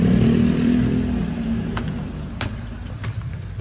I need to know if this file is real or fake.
fake